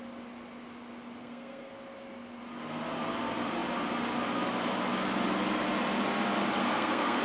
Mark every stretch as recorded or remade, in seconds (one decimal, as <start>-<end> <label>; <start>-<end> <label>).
0.0-1.2 recorded; 1.2-1.7 remade; 1.7-6.6 recorded; 6.6-7.2 remade